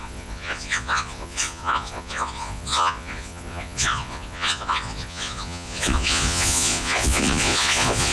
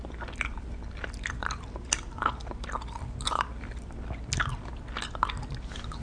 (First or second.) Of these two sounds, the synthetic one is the first